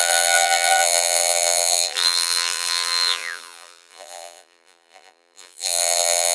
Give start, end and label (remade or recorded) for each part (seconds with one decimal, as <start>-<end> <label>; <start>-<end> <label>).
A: 0.0-6.3 remade